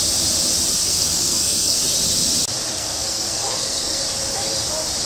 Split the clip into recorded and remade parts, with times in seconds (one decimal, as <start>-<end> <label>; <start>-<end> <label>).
0.0-0.8 recorded; 0.8-1.8 remade; 1.8-2.7 recorded; 2.7-4.0 remade; 4.0-5.1 recorded